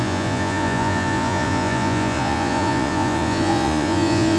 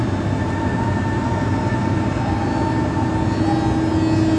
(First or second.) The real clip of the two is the second